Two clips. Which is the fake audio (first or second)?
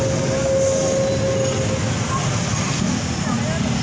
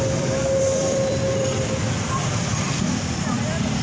second